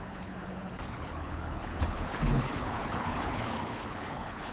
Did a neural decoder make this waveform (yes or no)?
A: yes